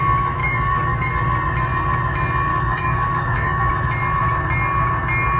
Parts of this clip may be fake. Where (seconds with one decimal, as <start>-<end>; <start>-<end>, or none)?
0.4-1.1; 2.5-3.7